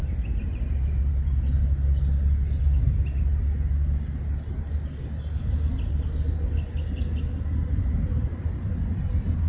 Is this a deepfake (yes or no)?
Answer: no